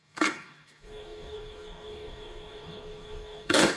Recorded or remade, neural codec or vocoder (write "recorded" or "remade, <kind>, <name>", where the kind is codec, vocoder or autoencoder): remade, codec, DAC